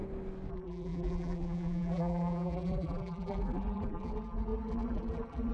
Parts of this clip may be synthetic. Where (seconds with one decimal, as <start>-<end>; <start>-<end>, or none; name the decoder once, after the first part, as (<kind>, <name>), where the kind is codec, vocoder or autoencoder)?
0.5-5.5 (vocoder, BigVGAN v2)